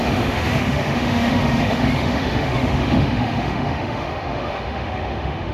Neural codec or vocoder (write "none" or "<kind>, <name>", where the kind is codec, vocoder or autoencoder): autoencoder, DAC-VAE